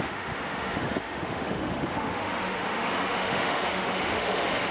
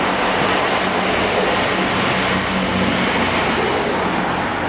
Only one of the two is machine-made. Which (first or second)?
first